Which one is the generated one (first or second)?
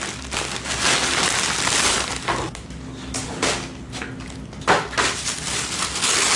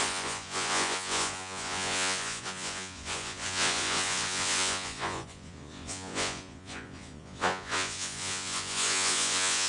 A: second